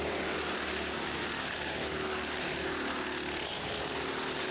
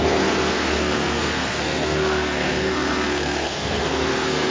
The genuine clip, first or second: first